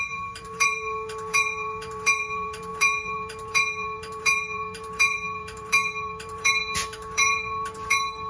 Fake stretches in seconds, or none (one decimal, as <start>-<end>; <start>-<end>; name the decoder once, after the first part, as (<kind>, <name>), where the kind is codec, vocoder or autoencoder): 0.0-8.3 (vocoder, BigVGAN v2)